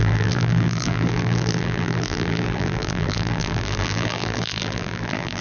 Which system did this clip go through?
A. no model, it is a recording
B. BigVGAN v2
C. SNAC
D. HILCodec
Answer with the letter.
B